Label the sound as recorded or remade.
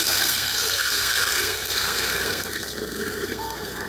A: remade